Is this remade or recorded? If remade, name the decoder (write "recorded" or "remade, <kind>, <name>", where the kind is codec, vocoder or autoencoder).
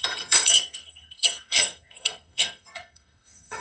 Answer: remade, codec, SNAC